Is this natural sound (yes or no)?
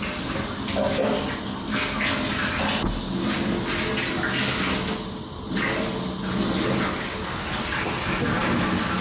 yes